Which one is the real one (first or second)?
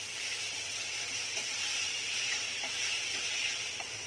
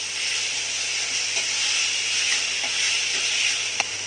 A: second